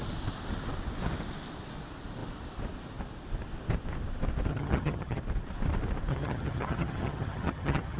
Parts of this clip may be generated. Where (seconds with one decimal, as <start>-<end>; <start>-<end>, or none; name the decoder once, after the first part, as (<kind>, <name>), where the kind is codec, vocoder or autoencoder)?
4.5-5.2 (vocoder, HiFi-GAN); 6.1-8.0